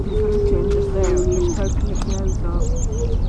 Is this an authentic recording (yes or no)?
yes